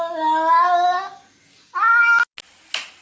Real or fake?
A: real